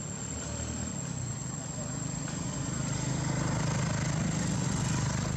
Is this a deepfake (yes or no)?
no